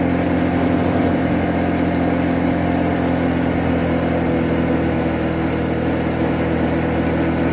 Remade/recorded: recorded